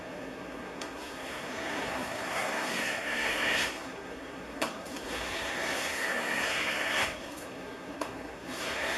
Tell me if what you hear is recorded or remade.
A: remade